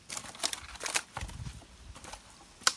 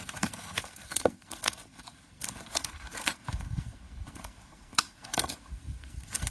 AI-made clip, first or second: second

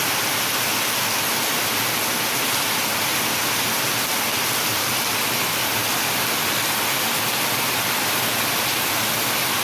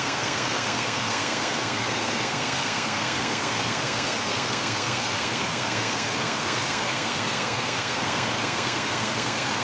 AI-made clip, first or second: second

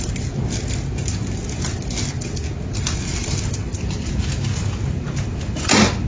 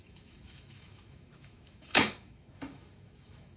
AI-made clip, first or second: second